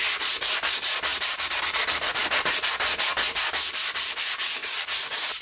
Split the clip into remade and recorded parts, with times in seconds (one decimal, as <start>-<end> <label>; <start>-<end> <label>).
0.0-1.1 recorded; 1.1-1.6 remade; 1.6-4.6 recorded; 4.6-5.4 remade